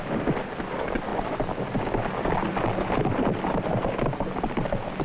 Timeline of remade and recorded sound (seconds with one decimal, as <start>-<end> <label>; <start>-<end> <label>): 0.0-5.0 recorded